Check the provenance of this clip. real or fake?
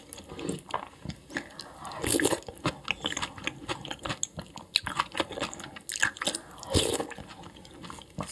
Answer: real